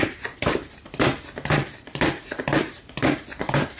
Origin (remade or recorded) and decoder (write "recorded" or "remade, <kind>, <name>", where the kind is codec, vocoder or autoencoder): remade, vocoder, BigVGAN v2